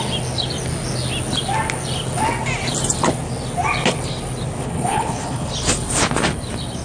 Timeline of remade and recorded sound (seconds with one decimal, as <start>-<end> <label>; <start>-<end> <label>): 0.0-4.6 recorded; 4.6-5.5 remade; 5.5-6.8 recorded